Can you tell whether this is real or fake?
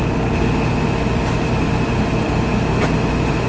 real